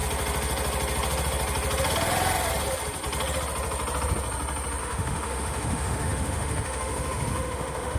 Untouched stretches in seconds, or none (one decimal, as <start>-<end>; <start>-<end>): 0.0-4.8